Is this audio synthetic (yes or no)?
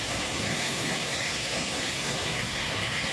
yes